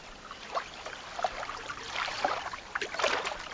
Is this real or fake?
fake